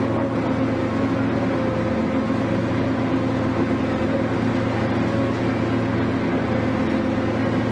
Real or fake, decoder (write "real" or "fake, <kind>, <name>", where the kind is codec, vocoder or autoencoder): real